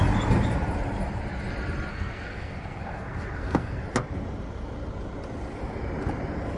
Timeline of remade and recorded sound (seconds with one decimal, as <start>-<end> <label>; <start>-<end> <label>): 0.0-1.9 recorded; 1.9-3.8 remade; 3.8-6.6 recorded